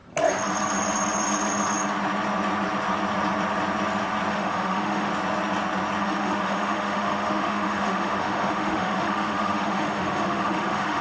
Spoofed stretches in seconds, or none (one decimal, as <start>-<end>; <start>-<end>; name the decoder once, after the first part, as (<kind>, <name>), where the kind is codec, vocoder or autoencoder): 4.3-5.1 (autoencoder, DAC-VAE); 6.0-11.0